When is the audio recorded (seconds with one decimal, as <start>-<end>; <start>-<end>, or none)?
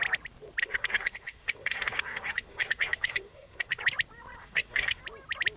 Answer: 0.0-0.6; 3.8-4.4; 5.0-5.6